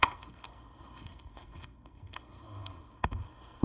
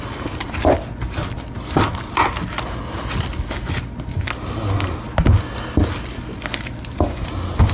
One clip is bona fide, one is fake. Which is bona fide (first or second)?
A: second